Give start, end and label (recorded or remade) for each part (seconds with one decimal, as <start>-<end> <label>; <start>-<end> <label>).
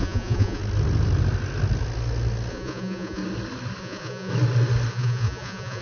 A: 0.0-0.6 remade; 0.6-2.5 recorded; 2.5-3.2 remade; 3.2-3.8 recorded; 3.8-4.3 remade; 4.3-4.9 recorded; 4.9-5.8 remade